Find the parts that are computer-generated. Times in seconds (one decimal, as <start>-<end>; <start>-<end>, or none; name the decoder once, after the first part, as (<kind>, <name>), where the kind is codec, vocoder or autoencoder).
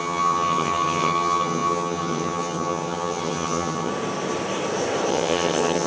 0.0-3.9 (vocoder, HiFi-GAN); 5.1-5.9